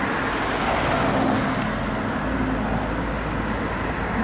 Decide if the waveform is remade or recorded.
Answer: recorded